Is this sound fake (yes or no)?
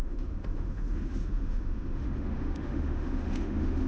yes